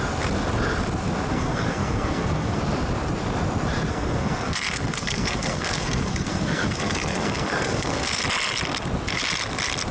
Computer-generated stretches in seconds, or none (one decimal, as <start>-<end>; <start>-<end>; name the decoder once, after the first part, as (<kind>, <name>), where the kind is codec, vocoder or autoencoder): 1.3-2.6 (codec, SNAC); 3.9-8.2